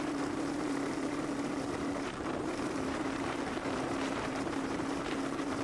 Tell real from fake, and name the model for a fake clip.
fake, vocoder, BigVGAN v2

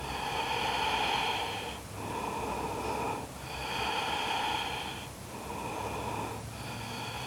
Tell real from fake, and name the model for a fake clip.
real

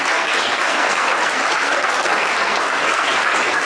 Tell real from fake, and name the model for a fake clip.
fake, codec, SNAC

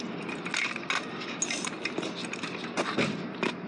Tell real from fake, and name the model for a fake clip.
real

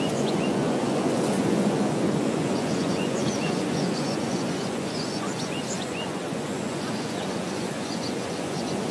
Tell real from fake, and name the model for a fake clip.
fake, vocoder, Vocos